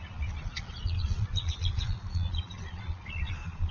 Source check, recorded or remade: remade